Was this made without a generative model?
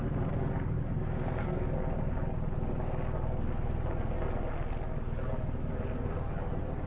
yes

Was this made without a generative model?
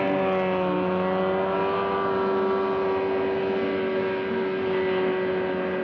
yes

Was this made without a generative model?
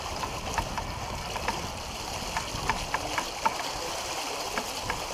yes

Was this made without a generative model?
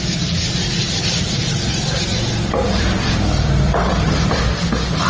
no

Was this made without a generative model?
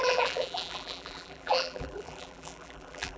no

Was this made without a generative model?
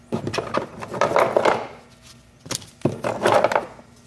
yes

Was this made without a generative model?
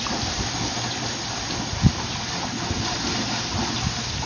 no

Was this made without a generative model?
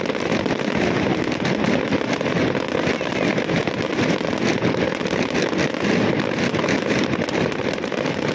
yes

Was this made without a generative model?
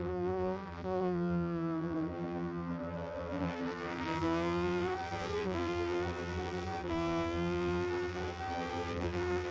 no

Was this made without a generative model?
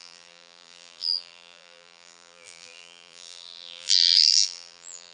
no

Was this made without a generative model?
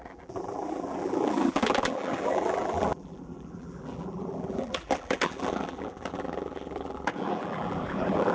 no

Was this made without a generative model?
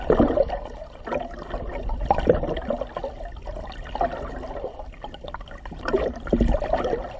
yes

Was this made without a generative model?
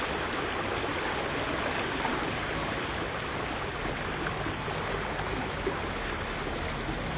yes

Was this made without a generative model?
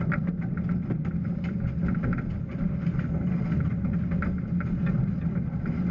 yes